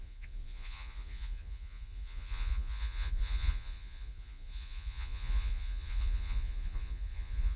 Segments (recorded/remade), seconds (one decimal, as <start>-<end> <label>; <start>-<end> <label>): 0.0-7.6 remade